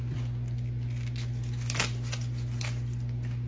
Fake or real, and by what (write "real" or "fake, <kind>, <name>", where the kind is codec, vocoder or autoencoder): real